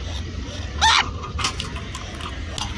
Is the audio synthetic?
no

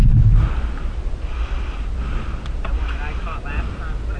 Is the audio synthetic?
no